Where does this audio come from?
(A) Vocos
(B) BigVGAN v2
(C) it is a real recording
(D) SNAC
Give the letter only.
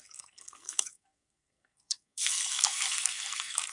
D